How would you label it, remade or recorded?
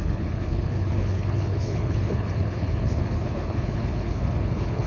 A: remade